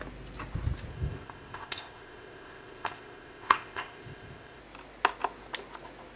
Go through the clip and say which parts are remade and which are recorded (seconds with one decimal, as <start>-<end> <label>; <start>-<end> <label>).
0.0-0.9 recorded; 0.9-4.6 remade; 4.6-6.2 recorded